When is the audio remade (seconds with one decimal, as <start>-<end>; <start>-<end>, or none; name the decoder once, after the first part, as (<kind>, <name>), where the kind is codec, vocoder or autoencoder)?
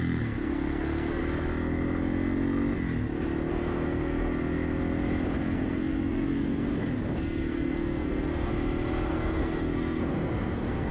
0.0-1.2 (codec, SNAC); 3.5-4.3; 5.4-6.7; 7.2-8.5; 9.1-10.9